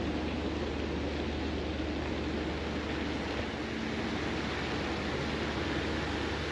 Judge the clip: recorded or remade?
recorded